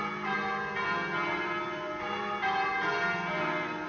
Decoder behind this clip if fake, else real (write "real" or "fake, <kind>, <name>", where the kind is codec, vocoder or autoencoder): real